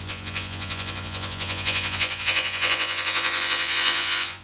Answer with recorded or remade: remade